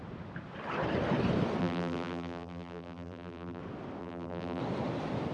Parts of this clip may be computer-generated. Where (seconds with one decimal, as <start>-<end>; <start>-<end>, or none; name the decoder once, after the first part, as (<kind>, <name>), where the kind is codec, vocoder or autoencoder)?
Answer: 1.6-3.6 (vocoder, BigVGAN v2); 4.0-4.6